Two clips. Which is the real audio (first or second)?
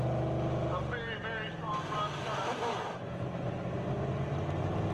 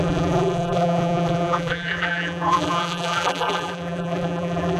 first